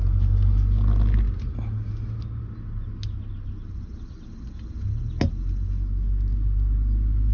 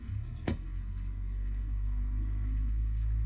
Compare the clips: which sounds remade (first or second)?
second